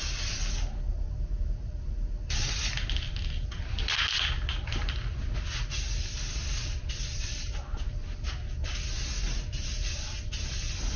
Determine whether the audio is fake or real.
real